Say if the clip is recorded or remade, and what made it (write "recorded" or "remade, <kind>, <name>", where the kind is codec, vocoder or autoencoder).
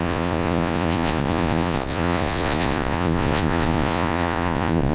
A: remade, vocoder, Vocos